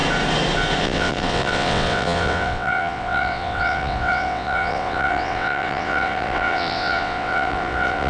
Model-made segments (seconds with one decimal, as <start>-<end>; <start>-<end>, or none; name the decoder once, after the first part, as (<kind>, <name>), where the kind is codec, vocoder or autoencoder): 0.8-8.1 (vocoder, WaveNeXt)